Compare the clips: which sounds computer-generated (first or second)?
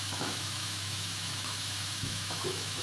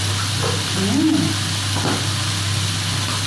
first